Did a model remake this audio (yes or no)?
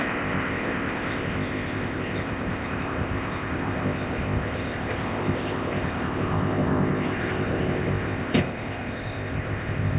yes